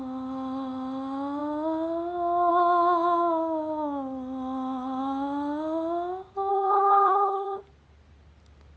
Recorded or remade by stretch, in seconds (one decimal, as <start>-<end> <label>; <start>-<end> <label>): 0.0-6.5 recorded; 6.5-7.6 remade; 7.6-8.8 recorded